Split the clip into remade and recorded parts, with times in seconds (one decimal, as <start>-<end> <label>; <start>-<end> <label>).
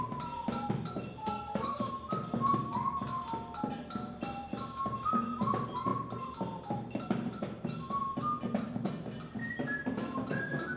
0.0-1.2 recorded; 1.2-1.9 remade; 1.9-10.8 recorded